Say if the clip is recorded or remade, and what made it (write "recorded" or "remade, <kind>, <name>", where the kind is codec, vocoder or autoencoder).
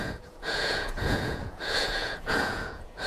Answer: remade, vocoder, Vocos